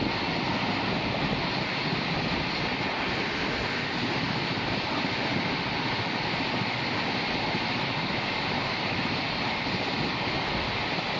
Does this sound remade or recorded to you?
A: recorded